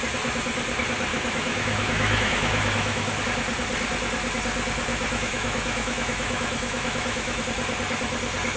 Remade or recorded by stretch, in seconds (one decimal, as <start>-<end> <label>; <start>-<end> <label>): 0.0-1.1 recorded; 1.1-3.2 remade; 3.2-4.9 recorded; 4.9-7.4 remade; 7.4-8.6 recorded